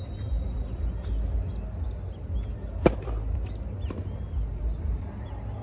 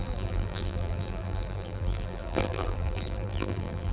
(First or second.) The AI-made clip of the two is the second